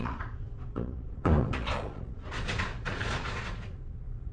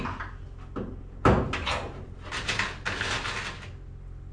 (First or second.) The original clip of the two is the second